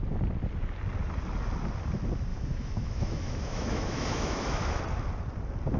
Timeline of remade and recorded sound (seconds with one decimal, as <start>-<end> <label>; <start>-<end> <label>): 0.0-2.3 recorded; 2.3-4.8 remade; 4.8-5.8 recorded